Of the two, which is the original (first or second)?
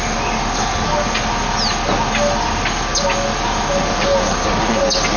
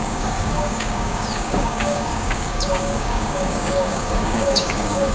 first